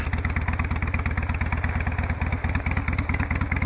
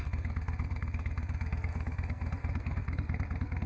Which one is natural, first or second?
first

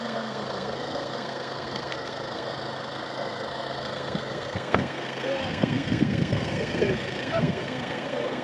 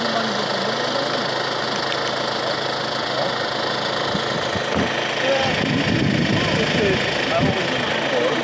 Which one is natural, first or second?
second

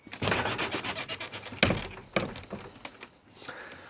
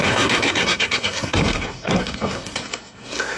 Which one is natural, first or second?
first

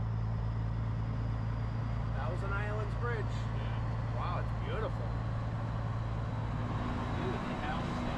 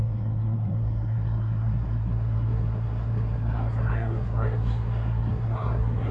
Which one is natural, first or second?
first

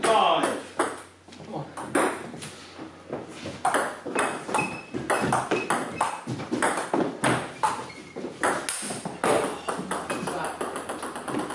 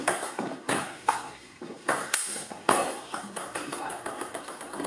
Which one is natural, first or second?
first